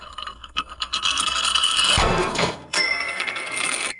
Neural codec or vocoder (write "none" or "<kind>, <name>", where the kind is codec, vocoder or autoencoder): codec, SNAC